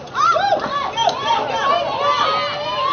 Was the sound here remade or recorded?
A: recorded